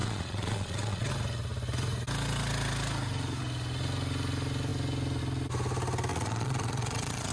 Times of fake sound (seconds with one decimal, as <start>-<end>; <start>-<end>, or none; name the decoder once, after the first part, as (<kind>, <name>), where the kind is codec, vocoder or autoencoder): 0.0-1.1 (vocoder, Vocos); 6.1-7.3